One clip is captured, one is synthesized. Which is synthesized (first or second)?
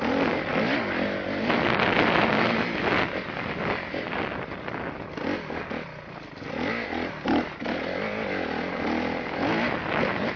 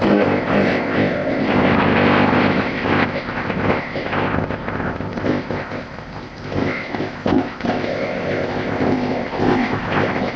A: second